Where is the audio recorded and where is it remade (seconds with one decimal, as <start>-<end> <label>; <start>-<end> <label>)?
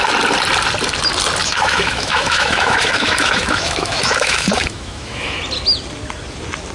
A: 0.0-1.4 recorded; 1.4-5.4 remade; 5.4-6.7 recorded